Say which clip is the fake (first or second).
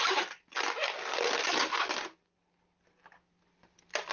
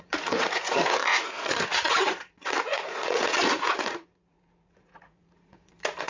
second